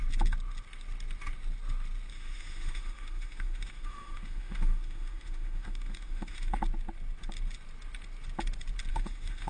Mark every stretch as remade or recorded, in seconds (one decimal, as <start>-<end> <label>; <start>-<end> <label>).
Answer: 0.0-2.1 recorded; 2.1-6.6 remade; 6.6-8.9 recorded; 8.9-9.5 remade